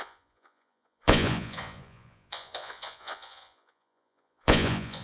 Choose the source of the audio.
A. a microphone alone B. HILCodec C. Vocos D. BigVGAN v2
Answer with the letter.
C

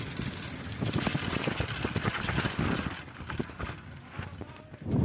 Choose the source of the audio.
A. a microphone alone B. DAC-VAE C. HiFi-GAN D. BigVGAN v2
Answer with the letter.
A